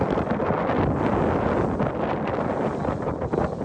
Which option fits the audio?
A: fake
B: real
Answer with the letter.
B